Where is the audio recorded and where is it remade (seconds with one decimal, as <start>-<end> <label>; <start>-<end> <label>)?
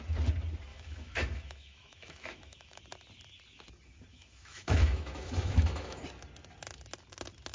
0.0-0.7 recorded; 0.7-2.8 remade; 2.8-4.1 recorded; 4.1-6.0 remade; 6.0-7.5 recorded